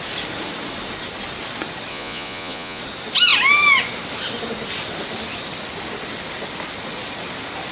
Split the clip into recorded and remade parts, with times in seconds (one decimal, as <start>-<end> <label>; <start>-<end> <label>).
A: 0.0-1.9 recorded; 1.9-2.8 remade; 2.8-7.7 recorded